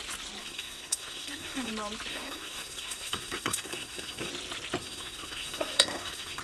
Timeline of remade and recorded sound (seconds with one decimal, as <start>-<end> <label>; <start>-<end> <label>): 0.0-0.4 recorded; 0.4-1.7 remade; 1.7-2.1 recorded; 2.1-4.3 remade; 4.3-4.8 recorded; 4.8-6.4 remade